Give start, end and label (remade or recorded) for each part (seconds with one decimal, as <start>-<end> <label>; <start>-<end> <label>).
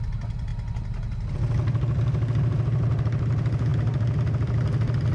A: 0.0-5.1 recorded